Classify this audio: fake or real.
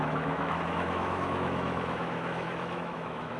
fake